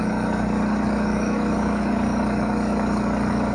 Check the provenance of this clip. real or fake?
fake